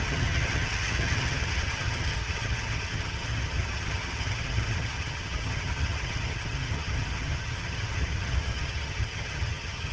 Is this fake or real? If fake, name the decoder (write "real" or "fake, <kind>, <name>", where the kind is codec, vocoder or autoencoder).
fake, vocoder, HiFi-GAN